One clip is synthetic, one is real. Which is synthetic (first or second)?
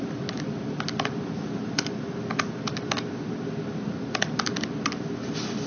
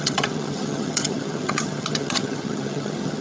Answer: second